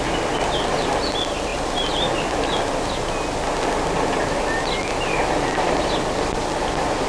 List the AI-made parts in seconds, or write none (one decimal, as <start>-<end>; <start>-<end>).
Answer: none